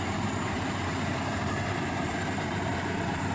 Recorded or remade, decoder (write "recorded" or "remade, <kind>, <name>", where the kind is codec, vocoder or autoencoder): remade, vocoder, BigVGAN v2